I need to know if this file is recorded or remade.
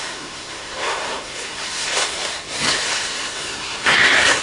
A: remade